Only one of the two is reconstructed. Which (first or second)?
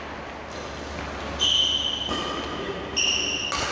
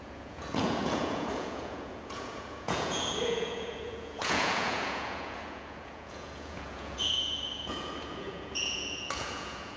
second